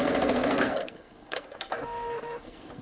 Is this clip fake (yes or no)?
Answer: yes